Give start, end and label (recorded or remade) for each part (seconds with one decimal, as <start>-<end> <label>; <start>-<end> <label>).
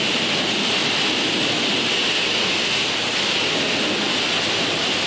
0.0-5.1 recorded